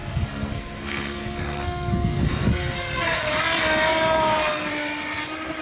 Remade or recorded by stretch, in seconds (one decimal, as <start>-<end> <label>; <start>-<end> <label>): 0.0-3.4 remade; 3.4-3.9 recorded; 3.9-4.7 remade; 4.7-5.6 recorded